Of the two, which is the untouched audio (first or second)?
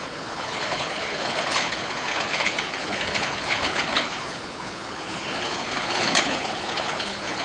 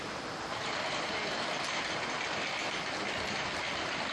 second